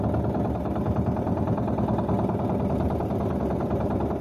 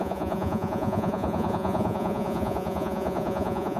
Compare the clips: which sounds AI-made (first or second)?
second